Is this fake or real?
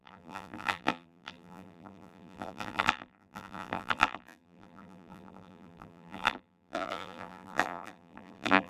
fake